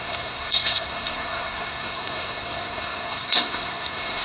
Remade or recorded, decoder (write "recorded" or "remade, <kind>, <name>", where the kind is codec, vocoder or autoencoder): remade, codec, SNAC